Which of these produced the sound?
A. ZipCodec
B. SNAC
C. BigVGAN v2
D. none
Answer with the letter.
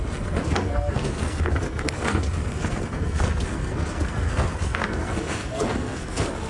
B